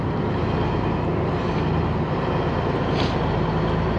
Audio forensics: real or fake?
real